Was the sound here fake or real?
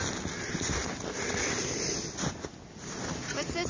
real